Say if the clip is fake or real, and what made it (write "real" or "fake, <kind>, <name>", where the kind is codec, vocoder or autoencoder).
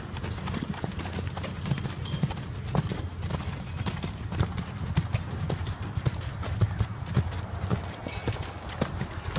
real